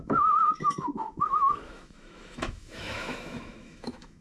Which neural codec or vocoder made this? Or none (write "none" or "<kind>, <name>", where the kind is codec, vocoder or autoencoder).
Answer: autoencoder, DAC-VAE